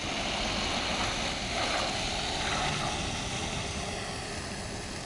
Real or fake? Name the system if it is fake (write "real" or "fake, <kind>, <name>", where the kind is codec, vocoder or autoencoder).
real